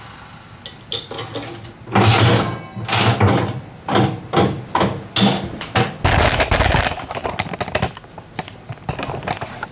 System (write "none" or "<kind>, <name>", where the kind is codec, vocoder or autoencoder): none